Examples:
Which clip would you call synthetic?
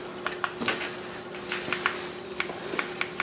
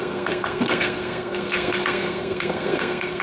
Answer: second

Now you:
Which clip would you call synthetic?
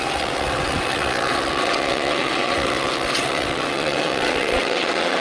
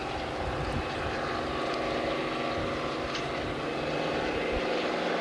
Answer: first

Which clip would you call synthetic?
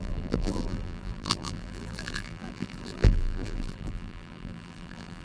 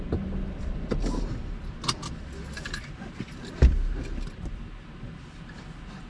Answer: first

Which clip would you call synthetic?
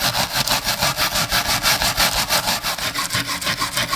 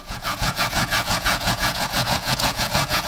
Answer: second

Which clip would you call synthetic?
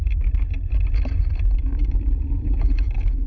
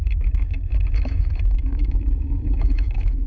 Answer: second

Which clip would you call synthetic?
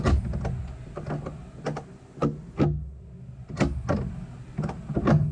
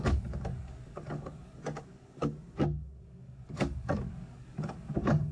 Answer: second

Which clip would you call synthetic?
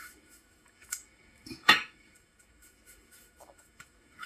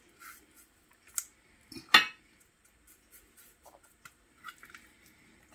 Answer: first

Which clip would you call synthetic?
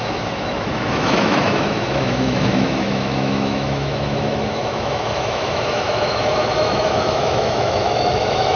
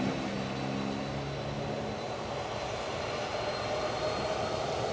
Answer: first